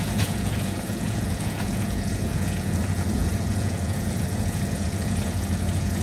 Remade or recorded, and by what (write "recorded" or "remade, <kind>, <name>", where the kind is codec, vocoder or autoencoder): remade, vocoder, Vocos